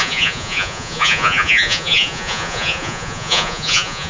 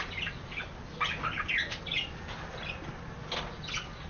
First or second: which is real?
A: second